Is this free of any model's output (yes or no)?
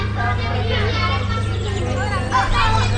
yes